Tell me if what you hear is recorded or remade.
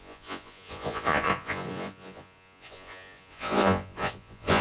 remade